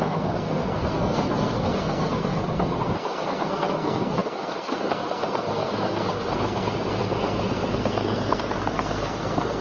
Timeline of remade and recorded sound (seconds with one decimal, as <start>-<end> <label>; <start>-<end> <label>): 0.0-9.6 remade